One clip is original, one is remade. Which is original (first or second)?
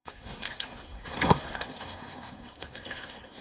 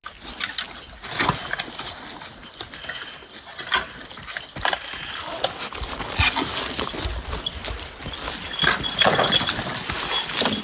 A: second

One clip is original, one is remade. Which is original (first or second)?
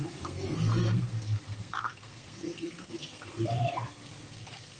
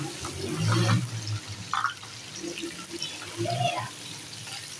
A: second